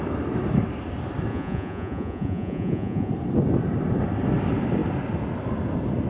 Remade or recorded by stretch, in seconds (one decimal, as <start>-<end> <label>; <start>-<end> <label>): 0.0-1.3 recorded; 1.3-3.1 remade; 3.1-6.1 recorded